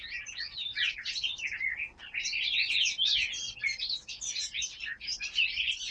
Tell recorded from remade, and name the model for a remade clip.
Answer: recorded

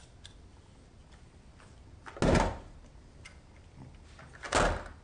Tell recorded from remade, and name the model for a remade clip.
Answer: recorded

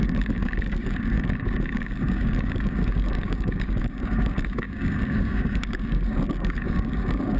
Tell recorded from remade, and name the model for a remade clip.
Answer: remade, codec, DAC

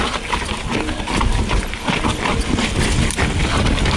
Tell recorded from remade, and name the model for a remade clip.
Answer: recorded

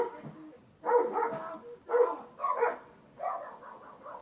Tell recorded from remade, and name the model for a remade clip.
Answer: recorded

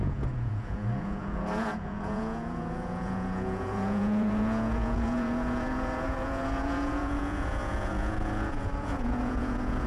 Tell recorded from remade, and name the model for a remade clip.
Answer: remade, vocoder, Vocos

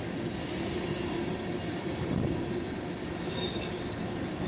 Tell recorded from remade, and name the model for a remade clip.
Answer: recorded